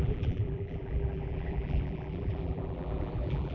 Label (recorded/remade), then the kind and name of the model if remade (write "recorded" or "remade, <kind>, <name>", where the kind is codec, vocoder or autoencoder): remade, vocoder, BigVGAN v2